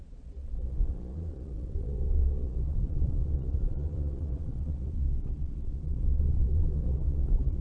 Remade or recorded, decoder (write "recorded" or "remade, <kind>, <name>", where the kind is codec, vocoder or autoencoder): remade, vocoder, Vocos